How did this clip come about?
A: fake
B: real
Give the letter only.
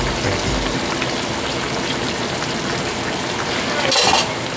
B